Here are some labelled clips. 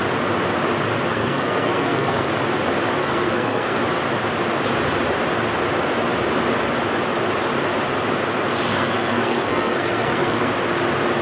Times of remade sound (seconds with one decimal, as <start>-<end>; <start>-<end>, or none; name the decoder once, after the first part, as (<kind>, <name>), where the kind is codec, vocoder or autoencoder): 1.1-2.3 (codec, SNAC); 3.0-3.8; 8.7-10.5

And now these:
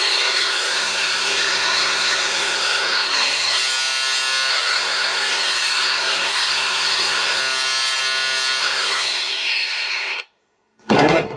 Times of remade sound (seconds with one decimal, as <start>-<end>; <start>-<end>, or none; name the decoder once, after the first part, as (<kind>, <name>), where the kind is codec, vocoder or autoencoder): 0.0-3.6 (codec, SNAC); 4.5-7.4; 8.6-11.4

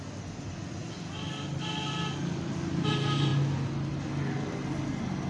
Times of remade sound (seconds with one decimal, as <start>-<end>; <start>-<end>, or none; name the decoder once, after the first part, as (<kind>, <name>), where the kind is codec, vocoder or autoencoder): none

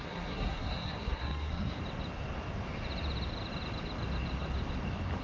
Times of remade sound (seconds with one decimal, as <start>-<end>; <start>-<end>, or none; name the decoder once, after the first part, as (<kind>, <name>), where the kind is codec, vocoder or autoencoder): 0.0-1.8 (codec, SNAC)